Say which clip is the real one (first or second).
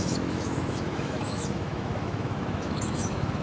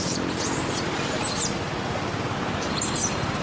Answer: second